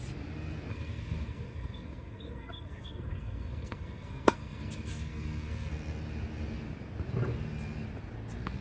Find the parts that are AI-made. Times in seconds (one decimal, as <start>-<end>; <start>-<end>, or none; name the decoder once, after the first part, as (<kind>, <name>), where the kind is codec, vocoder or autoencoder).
0.7-5.7 (codec, SNAC)